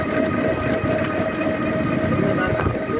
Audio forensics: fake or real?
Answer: real